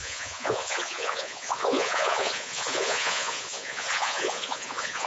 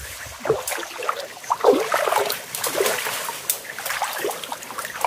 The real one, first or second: second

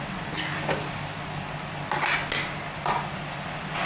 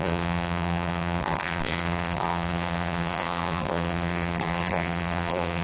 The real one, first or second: first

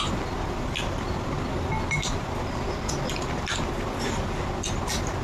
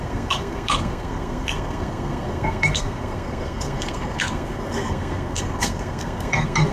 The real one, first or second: first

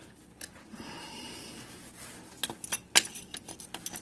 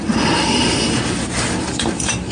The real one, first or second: first